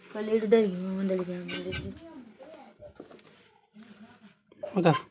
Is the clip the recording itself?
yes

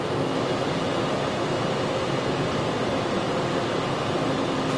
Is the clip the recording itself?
yes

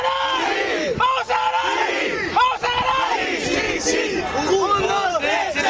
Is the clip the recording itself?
yes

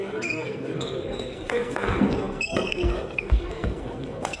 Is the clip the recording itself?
no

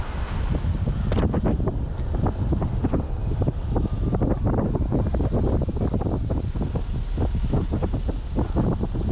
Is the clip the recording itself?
yes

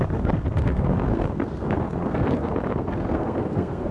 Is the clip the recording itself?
no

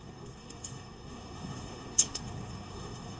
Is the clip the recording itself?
no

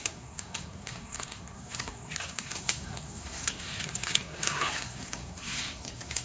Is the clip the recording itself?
no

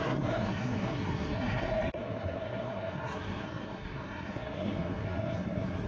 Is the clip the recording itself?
no